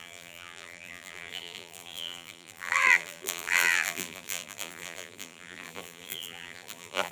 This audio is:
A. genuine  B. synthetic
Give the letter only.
B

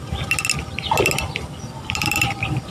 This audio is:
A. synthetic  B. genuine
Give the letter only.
B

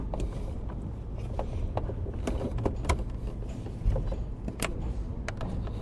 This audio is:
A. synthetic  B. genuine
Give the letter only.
B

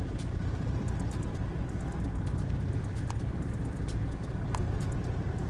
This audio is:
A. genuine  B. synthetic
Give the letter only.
B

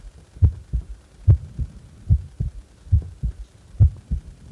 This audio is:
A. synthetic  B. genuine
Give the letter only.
B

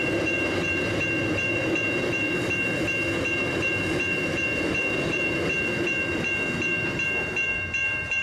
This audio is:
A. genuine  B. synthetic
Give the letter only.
B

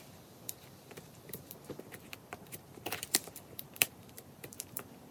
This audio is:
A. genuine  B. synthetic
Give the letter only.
B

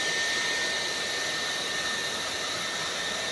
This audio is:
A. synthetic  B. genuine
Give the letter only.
B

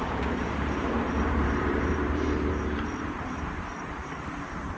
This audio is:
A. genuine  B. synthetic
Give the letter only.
B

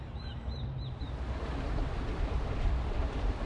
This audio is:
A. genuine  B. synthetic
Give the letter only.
B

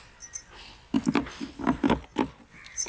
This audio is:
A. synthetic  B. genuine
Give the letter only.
A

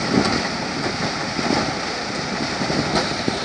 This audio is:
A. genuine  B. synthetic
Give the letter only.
A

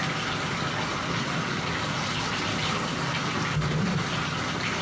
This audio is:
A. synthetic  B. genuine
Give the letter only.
B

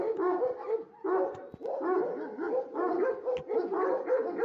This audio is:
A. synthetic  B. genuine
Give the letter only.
B